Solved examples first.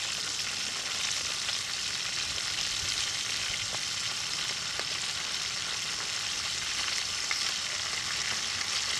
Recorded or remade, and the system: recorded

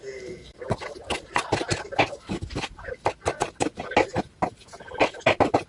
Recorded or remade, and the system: recorded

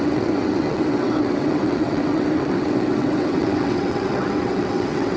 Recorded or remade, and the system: remade, vocoder, WaveNeXt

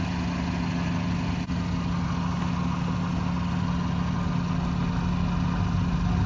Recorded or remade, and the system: recorded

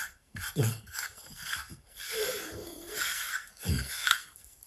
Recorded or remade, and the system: remade, codec, SNAC